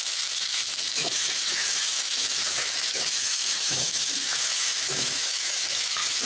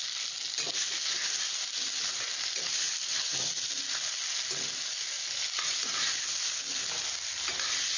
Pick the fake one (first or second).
first